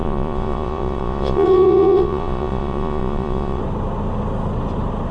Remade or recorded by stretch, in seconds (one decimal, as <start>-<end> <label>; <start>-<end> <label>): 0.0-3.6 remade; 3.6-5.1 recorded